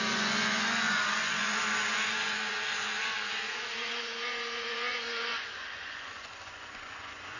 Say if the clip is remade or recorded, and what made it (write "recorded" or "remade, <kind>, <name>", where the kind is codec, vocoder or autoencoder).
remade, vocoder, Vocos